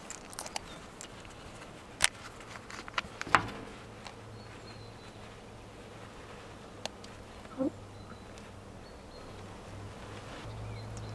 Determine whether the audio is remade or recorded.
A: recorded